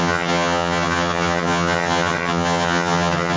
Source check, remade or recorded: remade